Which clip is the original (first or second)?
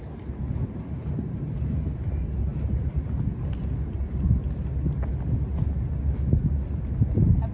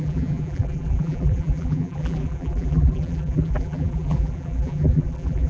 first